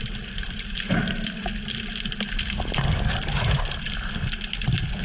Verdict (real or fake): real